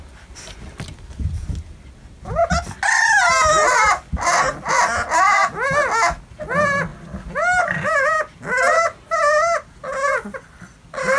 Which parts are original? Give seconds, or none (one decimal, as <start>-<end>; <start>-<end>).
0.0-11.2